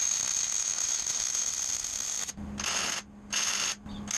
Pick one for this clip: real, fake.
real